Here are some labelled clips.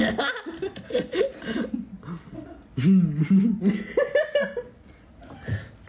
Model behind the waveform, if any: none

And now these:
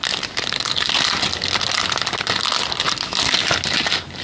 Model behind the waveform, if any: none